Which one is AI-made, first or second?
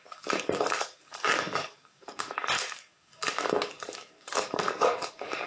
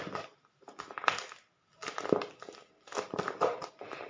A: first